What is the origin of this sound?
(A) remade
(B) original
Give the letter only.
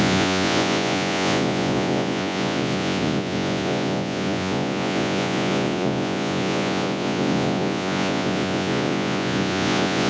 A